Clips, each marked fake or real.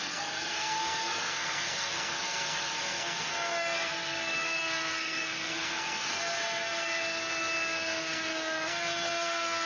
fake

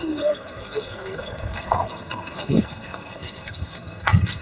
fake